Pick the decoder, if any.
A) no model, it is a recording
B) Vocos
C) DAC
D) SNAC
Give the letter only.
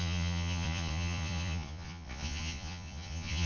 B